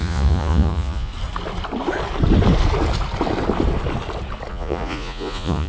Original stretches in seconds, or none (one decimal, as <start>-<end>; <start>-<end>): 1.1-4.5